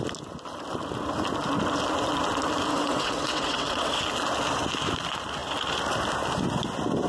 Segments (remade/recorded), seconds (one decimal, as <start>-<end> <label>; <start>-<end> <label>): 0.0-2.7 recorded; 2.7-4.0 remade; 4.0-7.1 recorded